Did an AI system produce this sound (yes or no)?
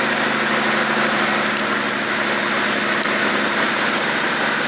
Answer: no